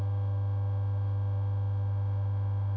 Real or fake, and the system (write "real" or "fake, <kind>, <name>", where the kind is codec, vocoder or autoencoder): fake, autoencoder, DAC-VAE